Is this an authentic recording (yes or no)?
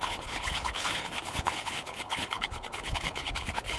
no